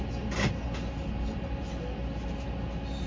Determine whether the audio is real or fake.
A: real